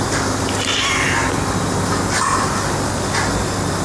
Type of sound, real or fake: real